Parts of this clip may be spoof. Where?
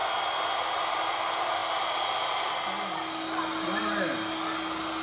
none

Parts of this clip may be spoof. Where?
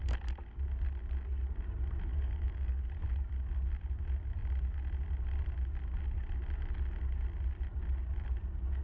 2.1-2.8 (codec, DAC)